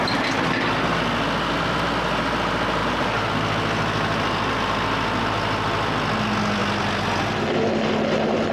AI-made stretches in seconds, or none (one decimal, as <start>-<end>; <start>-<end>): 2.8-3.3